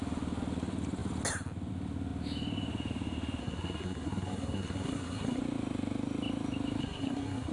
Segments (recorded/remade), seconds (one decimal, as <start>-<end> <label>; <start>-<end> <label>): 0.0-3.4 recorded; 3.4-5.4 remade; 5.4-6.8 recorded; 6.8-7.5 remade